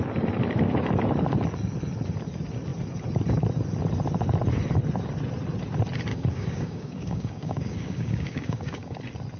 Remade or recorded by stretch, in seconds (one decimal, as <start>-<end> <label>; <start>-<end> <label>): 0.0-6.1 recorded; 6.1-9.0 remade; 9.0-9.4 recorded